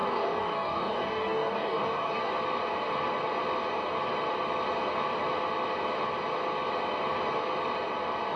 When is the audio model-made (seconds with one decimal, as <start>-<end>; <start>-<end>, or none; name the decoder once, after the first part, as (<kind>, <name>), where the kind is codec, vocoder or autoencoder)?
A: 0.0-2.3 (codec, DAC)